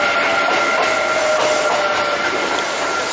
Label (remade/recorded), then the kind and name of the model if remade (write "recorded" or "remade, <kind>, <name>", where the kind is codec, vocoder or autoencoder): recorded